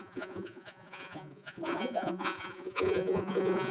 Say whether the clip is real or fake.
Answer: fake